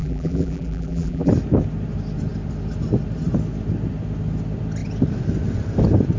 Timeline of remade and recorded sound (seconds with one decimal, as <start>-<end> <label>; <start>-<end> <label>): 0.0-1.3 remade; 1.3-6.2 recorded

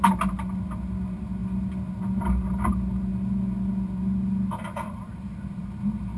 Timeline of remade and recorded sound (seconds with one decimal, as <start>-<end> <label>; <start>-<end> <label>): 0.0-6.2 recorded

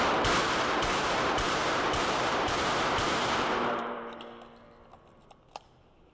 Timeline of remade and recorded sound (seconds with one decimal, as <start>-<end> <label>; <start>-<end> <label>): 0.0-0.4 recorded; 0.4-4.1 remade; 4.1-6.1 recorded

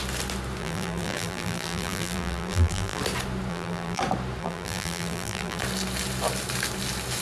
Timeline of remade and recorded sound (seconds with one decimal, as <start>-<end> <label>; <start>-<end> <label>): 0.0-0.6 recorded; 0.6-3.0 remade; 3.0-3.5 recorded; 3.5-4.0 remade; 4.0-4.4 recorded; 4.4-5.6 remade; 5.6-7.2 recorded

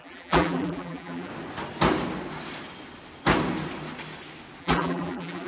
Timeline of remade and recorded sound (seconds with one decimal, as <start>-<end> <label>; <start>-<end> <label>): 0.0-1.3 remade; 1.3-4.6 recorded; 4.6-5.5 remade

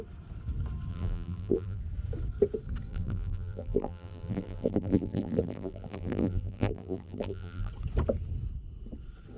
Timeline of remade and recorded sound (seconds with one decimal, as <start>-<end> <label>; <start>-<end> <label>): 0.0-0.9 recorded; 0.9-1.8 remade; 1.8-2.9 recorded; 2.9-7.7 remade; 7.7-9.4 recorded